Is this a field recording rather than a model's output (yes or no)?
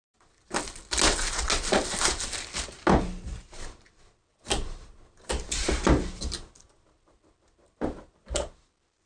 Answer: yes